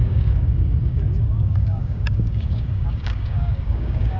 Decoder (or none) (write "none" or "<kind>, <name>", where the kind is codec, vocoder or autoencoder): codec, DAC